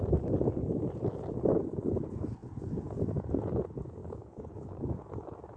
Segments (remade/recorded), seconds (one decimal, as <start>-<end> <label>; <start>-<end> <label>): 0.0-4.0 recorded; 4.0-5.1 remade; 5.1-5.6 recorded